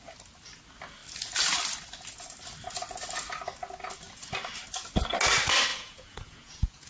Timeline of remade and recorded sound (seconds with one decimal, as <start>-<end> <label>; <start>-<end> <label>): 0.0-5.7 recorded; 5.7-6.9 remade